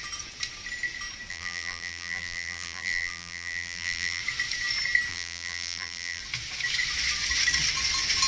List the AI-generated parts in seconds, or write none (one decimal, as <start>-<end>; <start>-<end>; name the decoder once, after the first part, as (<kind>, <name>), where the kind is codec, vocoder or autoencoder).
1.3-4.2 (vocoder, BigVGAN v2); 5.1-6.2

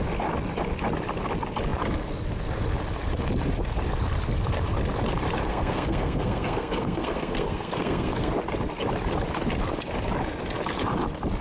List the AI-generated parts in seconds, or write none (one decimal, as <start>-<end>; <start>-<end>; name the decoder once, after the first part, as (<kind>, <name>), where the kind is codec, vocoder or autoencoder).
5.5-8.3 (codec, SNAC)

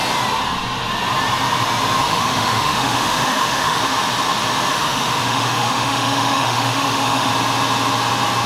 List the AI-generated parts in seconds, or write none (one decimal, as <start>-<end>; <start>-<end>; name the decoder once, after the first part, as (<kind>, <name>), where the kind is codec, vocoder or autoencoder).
2.0-3.8 (autoencoder, DAC-VAE); 4.7-7.3

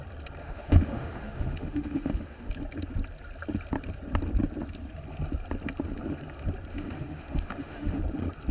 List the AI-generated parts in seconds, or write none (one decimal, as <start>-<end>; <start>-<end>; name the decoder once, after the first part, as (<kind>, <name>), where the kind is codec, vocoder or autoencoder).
0.4-2.5 (autoencoder, DAC-VAE); 6.7-8.0